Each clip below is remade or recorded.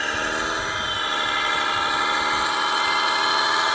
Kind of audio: recorded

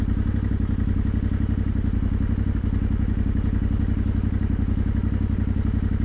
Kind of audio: recorded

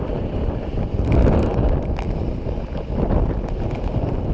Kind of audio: recorded